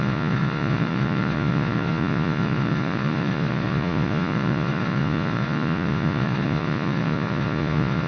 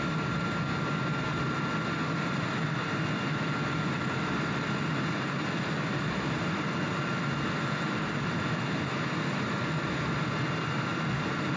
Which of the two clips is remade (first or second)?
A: first